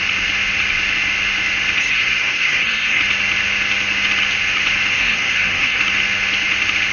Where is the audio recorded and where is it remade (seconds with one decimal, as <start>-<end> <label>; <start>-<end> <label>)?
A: 0.0-1.8 recorded; 1.8-3.0 remade; 3.0-4.9 recorded; 4.9-5.8 remade; 5.8-6.9 recorded